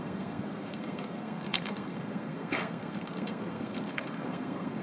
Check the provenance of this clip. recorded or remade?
remade